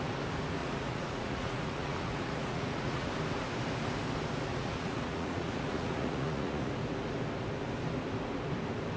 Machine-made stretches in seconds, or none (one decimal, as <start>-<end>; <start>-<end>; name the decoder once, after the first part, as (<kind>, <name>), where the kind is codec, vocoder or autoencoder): 0.6-3.1 (vocoder, Vocos); 4.5-6.7